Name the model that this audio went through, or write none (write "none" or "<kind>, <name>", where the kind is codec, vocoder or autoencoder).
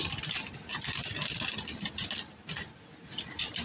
none